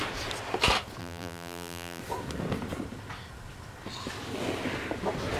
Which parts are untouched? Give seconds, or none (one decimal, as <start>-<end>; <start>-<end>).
0.0-1.0; 2.0-5.4